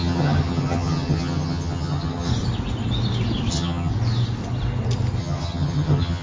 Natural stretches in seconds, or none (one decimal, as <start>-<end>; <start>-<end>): 2.3-3.5; 3.9-5.2